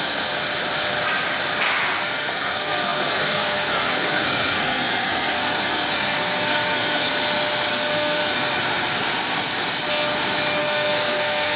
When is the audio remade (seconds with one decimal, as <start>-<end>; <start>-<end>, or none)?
0.0-0.4; 1.8-7.1; 7.7-8.2; 10.6-11.6